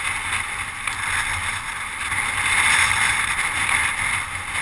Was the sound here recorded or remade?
recorded